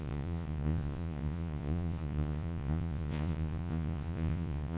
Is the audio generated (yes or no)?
yes